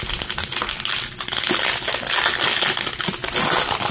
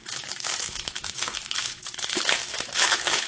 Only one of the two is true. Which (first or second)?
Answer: first